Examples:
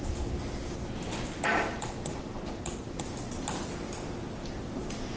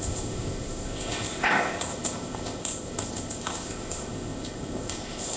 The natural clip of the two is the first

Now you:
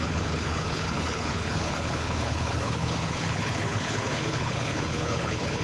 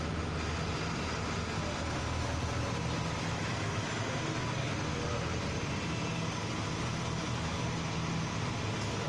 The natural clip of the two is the second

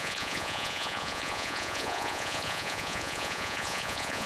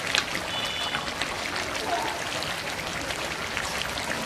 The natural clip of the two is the second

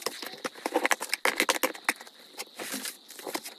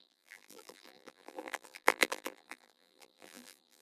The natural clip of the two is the first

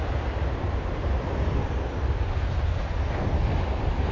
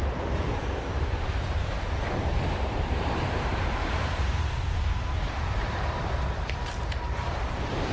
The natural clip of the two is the first